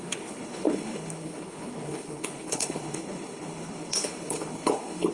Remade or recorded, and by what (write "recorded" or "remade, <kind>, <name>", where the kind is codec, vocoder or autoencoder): remade, codec, HILCodec